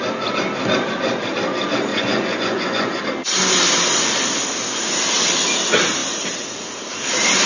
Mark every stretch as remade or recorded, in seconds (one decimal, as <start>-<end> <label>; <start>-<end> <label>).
0.0-1.9 recorded; 1.9-3.0 remade; 3.0-7.5 recorded